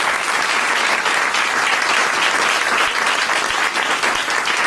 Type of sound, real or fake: real